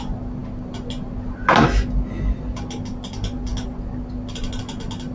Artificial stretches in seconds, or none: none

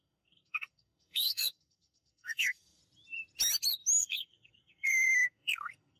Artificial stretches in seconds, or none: 0.0-2.8 (codec, SNAC); 4.0-6.0